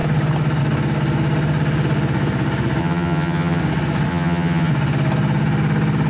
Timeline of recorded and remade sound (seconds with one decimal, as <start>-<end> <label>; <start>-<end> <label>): 0.0-2.8 recorded; 2.8-3.6 remade; 3.6-4.1 recorded; 4.1-4.7 remade; 4.7-6.1 recorded